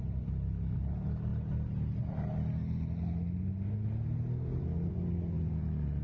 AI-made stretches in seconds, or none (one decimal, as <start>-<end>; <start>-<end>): none